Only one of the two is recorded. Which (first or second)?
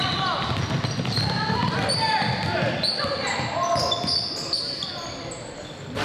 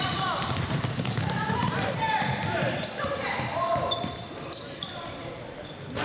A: first